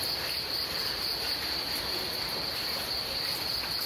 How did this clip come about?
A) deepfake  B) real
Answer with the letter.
B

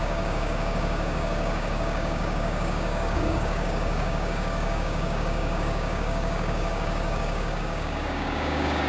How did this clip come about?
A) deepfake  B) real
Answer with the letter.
A